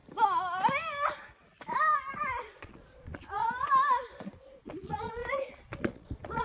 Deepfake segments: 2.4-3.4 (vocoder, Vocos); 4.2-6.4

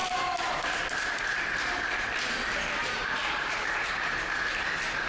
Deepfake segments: 0.0-0.5 (vocoder, BigVGAN v2); 2.8-4.2